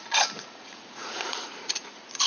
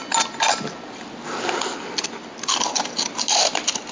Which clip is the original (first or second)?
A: second